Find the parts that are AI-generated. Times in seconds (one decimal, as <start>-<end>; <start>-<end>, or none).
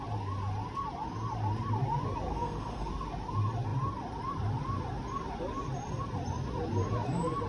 2.3-2.9